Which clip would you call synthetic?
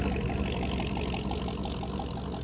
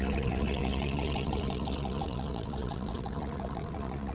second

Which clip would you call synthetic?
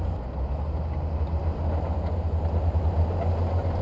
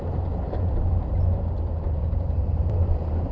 second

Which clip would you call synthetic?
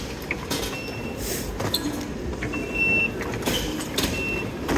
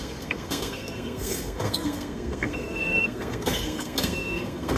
second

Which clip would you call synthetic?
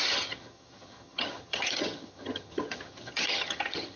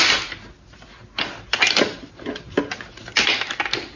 first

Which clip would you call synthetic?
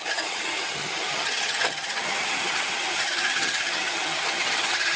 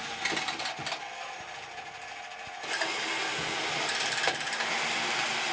first